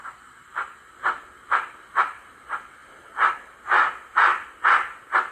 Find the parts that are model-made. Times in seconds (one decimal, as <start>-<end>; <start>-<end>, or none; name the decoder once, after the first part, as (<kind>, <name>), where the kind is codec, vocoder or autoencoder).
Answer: 0.0-4.3 (vocoder, BigVGAN v2)